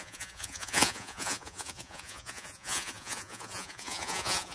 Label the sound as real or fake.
fake